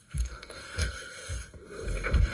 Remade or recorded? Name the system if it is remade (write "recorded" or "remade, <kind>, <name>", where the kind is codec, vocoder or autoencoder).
remade, codec, SNAC